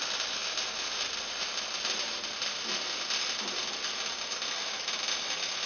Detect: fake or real real